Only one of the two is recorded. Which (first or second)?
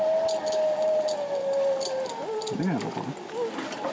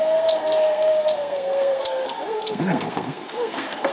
first